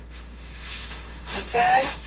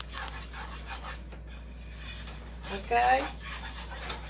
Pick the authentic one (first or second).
second